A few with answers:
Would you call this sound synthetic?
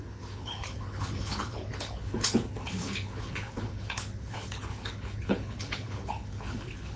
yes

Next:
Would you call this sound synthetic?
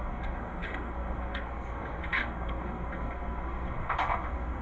yes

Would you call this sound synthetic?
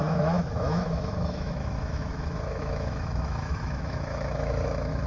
yes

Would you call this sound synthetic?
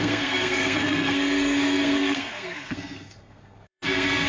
yes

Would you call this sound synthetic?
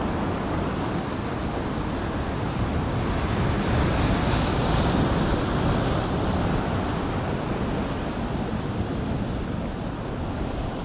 no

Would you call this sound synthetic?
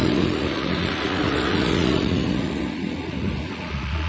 yes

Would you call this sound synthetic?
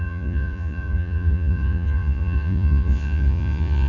yes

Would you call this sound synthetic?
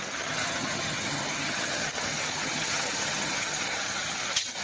yes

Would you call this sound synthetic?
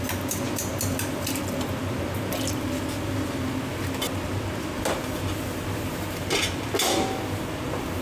no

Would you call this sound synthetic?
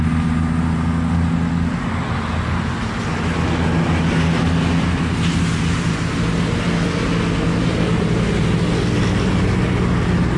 no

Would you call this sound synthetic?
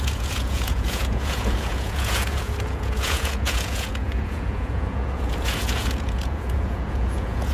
yes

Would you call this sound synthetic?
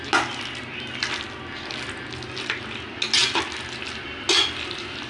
no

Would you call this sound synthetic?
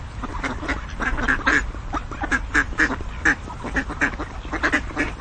no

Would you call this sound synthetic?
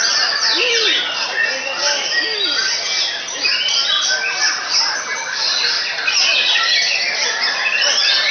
no